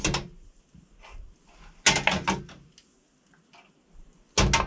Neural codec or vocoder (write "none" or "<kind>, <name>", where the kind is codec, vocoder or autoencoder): none